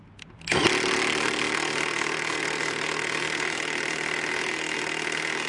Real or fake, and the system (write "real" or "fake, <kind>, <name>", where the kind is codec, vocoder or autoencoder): real